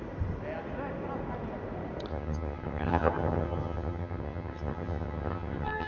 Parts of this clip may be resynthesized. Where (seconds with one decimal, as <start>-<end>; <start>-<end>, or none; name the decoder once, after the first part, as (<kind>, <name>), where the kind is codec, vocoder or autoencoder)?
2.1-5.9 (vocoder, HiFi-GAN)